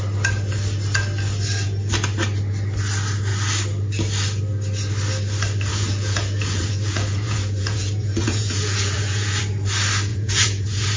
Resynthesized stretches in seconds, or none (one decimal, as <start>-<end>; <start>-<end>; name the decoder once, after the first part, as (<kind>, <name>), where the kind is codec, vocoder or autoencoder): 5.7-9.4 (vocoder, Vocos); 10.1-11.0